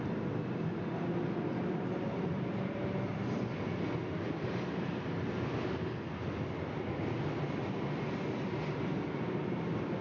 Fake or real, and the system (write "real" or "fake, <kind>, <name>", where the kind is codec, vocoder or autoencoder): real